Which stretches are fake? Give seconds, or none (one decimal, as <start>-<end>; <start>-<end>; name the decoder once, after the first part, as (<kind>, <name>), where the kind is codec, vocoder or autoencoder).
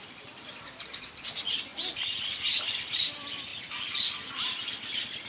0.0-1.7 (vocoder, BigVGAN v2); 2.6-3.5